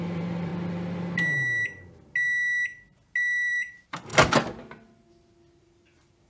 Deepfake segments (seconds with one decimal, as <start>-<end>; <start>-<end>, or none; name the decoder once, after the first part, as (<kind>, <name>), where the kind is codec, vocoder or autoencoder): 0.0-0.5 (vocoder, BigVGAN v2); 3.5-4.1; 5.6-6.3